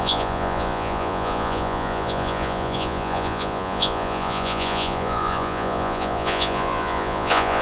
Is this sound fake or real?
fake